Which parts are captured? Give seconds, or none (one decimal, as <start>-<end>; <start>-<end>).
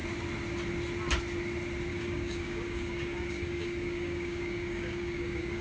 0.0-1.9